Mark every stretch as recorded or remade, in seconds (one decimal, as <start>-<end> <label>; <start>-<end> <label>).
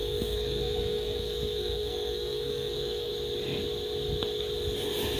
0.0-3.1 remade; 3.1-5.2 recorded